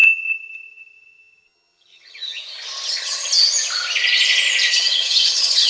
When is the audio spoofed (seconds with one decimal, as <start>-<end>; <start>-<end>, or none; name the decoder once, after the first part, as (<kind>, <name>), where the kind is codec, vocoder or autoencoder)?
0.0-2.4 (vocoder, HiFi-GAN); 2.9-3.3; 4.7-5.7

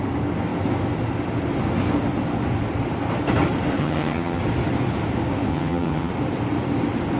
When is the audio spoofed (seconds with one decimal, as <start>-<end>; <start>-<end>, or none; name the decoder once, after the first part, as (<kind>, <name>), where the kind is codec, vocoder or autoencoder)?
3.8-4.4 (vocoder, HiFi-GAN); 5.5-6.1

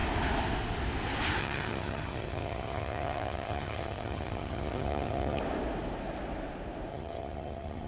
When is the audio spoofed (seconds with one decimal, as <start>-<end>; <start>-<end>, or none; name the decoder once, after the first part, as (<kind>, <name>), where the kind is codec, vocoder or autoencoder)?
1.4-5.4 (vocoder, HiFi-GAN); 6.9-7.9

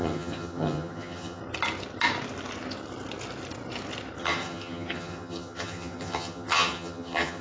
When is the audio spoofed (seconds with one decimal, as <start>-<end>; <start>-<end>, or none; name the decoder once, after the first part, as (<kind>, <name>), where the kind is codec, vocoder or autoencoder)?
0.0-1.4 (vocoder, HiFi-GAN); 4.2-7.4

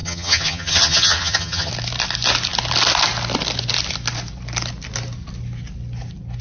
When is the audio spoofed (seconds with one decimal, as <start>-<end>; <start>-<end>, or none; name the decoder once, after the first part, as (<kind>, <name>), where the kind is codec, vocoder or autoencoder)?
0.0-1.7 (vocoder, HiFi-GAN)

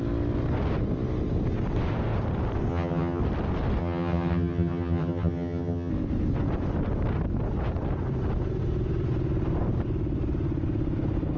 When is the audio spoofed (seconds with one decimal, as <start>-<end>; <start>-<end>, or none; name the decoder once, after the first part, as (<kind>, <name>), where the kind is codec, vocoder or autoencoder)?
2.7-3.2 (vocoder, HiFi-GAN); 3.8-5.9